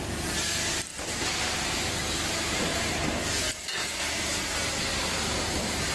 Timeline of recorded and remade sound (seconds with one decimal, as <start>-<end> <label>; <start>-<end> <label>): 0.0-0.9 recorded; 0.9-1.8 remade; 1.8-2.7 recorded; 2.7-3.2 remade; 3.2-4.9 recorded; 4.9-5.9 remade